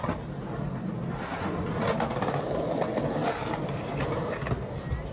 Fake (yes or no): no